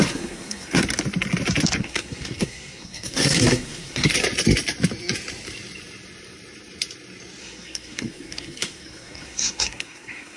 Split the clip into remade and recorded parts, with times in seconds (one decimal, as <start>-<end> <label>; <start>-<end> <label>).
0.0-0.8 remade; 0.8-1.8 recorded; 1.8-4.1 remade; 4.1-7.4 recorded; 7.4-10.4 remade